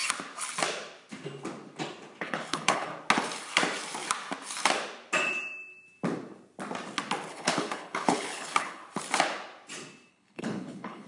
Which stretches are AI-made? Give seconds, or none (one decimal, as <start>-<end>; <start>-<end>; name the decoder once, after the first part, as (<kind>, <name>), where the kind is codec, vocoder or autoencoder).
2.2-2.9 (codec, HILCodec); 7.3-8.8; 10.1-11.1